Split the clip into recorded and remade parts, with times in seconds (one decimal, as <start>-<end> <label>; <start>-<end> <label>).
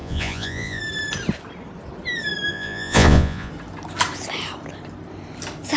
0.0-0.8 remade; 0.8-2.5 recorded; 2.5-3.5 remade; 3.5-5.8 recorded